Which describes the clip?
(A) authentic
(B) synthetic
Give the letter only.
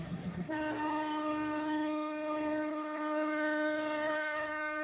B